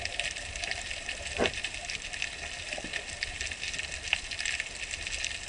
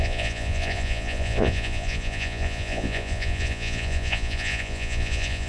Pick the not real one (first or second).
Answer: second